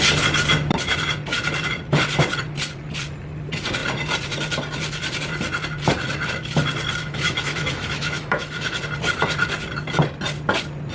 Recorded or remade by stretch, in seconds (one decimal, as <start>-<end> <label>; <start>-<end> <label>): 0.0-7.0 recorded; 7.0-8.8 remade; 8.8-10.9 recorded